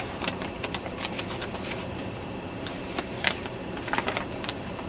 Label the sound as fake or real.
fake